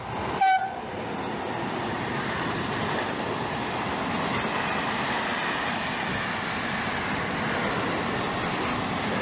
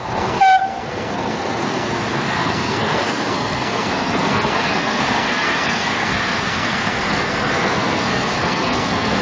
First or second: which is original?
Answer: first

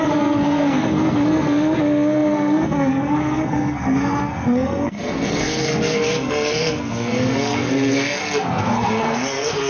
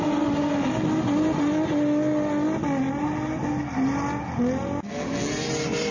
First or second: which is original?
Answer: second